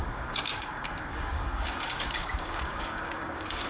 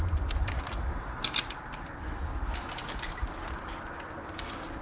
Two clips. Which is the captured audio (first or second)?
second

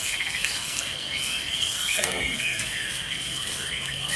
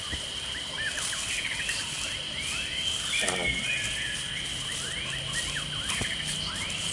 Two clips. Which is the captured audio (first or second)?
second